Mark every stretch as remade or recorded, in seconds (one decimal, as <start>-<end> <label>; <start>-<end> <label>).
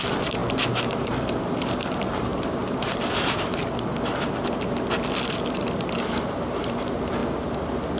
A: 0.0-3.5 remade; 3.5-5.3 recorded; 5.3-7.2 remade; 7.2-8.0 recorded